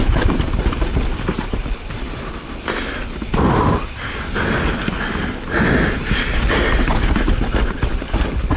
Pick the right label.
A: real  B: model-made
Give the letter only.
A